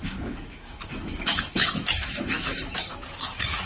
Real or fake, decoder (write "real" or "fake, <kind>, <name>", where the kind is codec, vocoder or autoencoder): fake, autoencoder, DAC-VAE